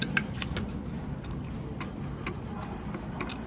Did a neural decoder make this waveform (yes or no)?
no